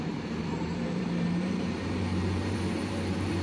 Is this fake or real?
fake